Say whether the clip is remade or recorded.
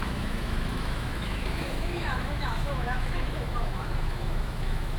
remade